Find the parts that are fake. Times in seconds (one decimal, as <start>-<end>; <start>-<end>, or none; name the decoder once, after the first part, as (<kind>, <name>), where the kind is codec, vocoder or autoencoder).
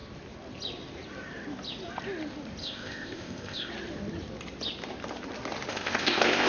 2.6-3.7 (codec, ZipCodec); 5.7-6.5